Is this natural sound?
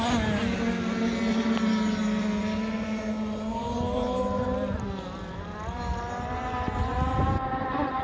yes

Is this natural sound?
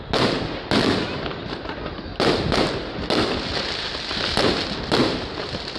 yes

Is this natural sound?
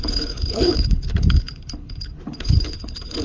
no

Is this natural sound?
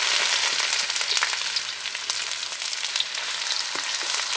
yes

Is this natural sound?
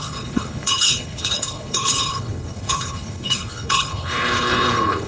no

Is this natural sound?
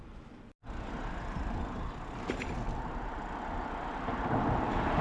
yes